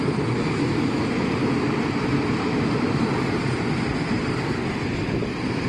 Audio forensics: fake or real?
fake